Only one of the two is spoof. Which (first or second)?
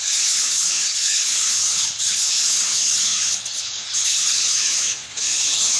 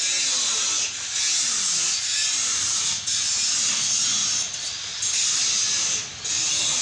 first